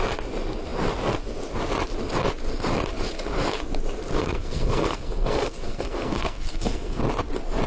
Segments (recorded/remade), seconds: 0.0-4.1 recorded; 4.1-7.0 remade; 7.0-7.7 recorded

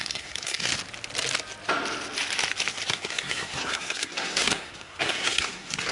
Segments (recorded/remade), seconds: 0.0-0.7 remade; 0.7-2.9 recorded; 2.9-5.9 remade

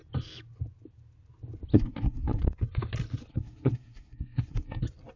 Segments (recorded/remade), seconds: 0.0-1.7 recorded; 1.7-2.4 remade; 2.4-3.3 recorded; 3.3-4.8 remade; 4.8-5.2 recorded